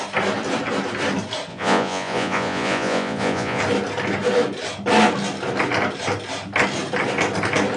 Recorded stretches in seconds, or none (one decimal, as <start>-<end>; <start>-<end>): 0.0-1.5; 3.6-7.8